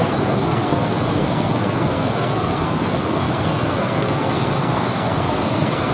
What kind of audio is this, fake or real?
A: fake